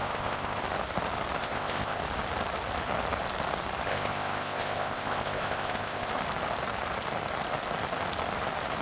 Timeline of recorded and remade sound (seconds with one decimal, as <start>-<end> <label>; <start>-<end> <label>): 0.0-0.6 remade; 0.6-1.4 recorded; 1.4-2.0 remade; 2.0-3.9 recorded; 3.9-6.1 remade; 6.1-8.8 recorded

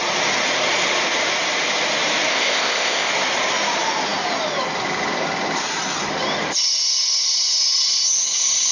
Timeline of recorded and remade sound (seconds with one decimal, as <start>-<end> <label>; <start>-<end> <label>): 0.0-2.3 recorded; 2.3-3.1 remade; 3.1-8.7 recorded

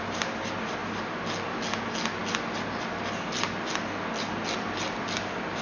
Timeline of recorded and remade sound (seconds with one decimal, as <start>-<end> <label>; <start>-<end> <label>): 0.0-5.6 recorded

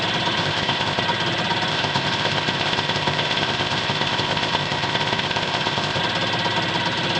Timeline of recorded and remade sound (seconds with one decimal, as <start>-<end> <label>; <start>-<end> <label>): 0.0-0.4 recorded; 0.4-1.0 remade; 1.0-1.7 recorded; 1.7-6.0 remade; 6.0-7.2 recorded